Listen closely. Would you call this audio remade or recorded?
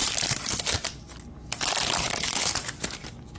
recorded